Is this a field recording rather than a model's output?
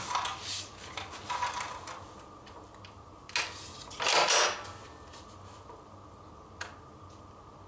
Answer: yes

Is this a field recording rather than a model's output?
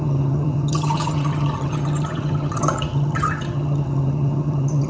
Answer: no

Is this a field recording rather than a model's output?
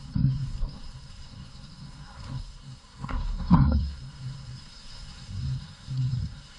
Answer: no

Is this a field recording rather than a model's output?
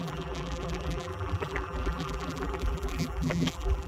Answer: no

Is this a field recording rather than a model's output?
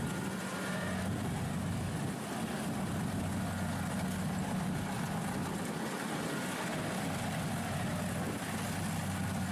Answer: yes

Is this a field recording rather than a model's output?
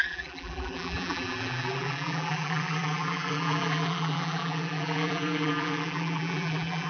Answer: no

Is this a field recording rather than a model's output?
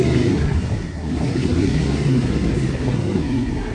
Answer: no